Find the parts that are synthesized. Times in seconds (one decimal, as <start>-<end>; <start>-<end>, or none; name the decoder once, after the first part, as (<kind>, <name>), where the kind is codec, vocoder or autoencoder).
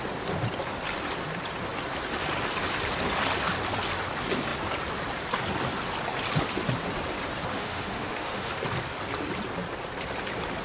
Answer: 7.5-8.5 (autoencoder, DAC-VAE)